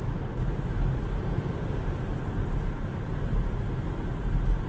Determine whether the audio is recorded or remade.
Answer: recorded